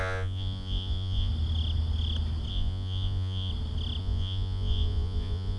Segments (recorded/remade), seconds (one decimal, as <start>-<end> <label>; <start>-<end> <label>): 0.0-1.3 remade; 1.3-2.5 recorded; 2.5-3.5 remade; 3.5-4.0 recorded; 4.0-5.6 remade